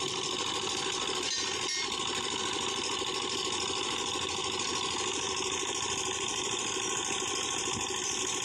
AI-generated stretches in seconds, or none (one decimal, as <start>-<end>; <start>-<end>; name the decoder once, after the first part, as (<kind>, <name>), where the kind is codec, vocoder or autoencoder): none